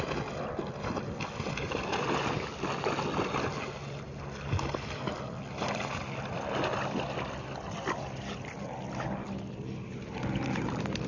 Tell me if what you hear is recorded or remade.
recorded